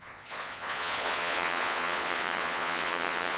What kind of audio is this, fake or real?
fake